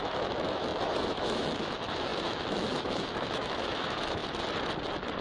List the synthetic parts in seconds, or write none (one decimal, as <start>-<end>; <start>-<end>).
0.0-4.2